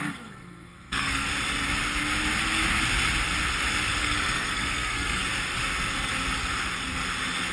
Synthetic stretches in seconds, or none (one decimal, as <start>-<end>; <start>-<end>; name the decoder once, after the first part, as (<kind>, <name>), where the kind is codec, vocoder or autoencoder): 0.0-1.3 (codec, SNAC); 4.0-5.2